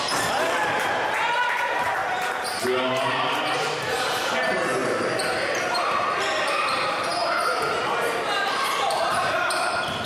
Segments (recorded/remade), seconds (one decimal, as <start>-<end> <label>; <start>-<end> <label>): 0.0-2.0 remade; 2.0-3.0 recorded; 3.0-7.1 remade; 7.1-7.8 recorded; 7.8-10.1 remade